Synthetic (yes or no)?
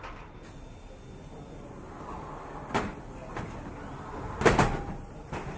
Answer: no